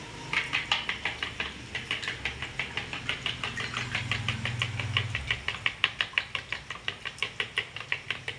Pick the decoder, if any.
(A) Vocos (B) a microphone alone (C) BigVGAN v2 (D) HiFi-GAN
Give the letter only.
B